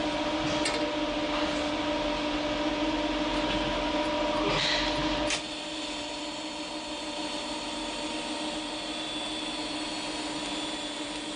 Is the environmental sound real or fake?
real